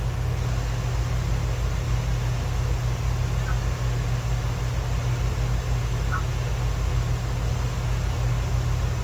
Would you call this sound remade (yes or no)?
no